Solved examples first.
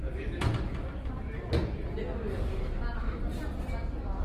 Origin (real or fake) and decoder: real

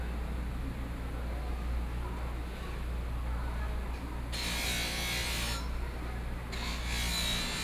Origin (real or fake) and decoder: real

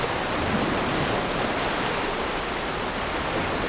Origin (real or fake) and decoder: real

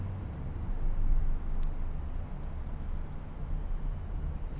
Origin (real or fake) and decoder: real